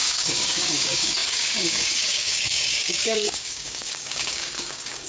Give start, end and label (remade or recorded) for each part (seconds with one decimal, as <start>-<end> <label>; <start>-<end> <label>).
0.0-5.1 remade